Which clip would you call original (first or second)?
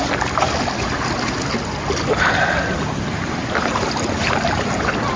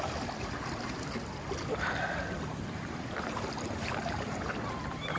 first